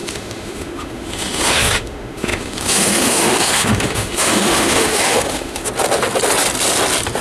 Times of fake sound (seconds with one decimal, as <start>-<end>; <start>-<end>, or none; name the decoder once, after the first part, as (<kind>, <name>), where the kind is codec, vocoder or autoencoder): 0.0-5.7 (autoencoder, DAC-VAE)